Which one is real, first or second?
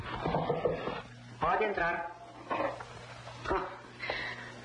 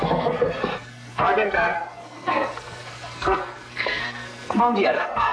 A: first